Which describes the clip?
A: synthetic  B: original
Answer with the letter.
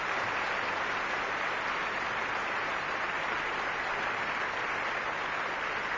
B